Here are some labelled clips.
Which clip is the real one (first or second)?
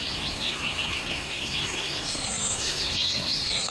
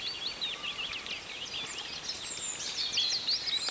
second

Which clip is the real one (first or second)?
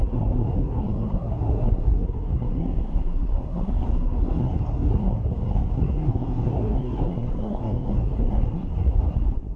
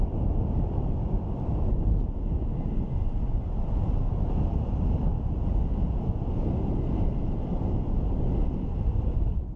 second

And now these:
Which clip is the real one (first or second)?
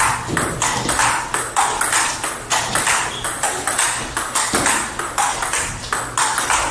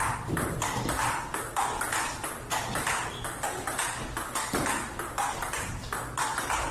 first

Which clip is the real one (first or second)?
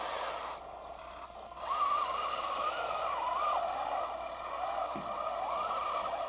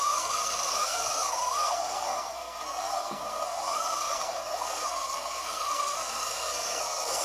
first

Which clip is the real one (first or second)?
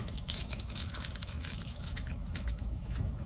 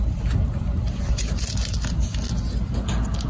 second